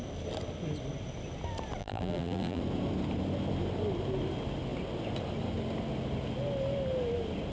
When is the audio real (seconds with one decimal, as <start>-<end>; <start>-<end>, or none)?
0.0-1.8; 2.6-7.5

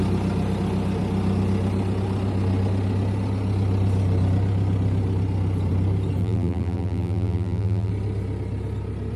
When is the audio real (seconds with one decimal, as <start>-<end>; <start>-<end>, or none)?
0.0-6.2; 7.9-9.2

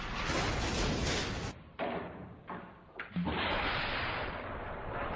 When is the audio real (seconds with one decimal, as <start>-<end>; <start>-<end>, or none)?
1.2-4.3